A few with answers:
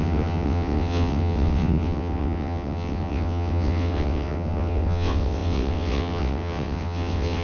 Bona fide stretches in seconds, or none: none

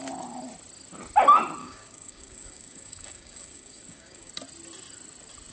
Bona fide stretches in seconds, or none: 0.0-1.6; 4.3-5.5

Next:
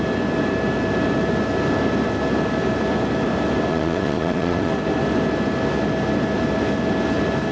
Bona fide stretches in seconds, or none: 0.0-3.7; 4.7-7.5

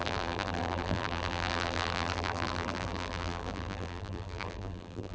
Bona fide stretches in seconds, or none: none

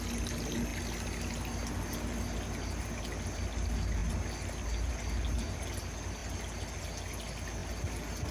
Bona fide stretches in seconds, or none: 0.0-8.3